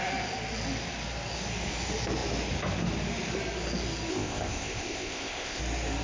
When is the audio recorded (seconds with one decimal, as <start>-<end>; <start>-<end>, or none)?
0.0-4.1; 5.6-6.0